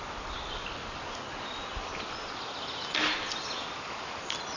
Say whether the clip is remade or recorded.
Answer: recorded